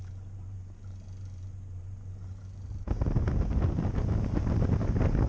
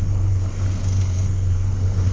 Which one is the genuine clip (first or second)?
first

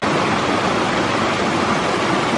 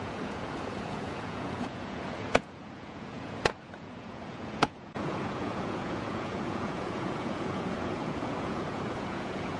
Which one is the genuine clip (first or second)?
first